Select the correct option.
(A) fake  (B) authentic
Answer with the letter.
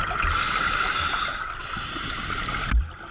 B